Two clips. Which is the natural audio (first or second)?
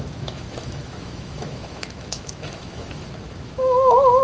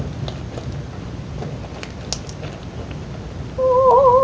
second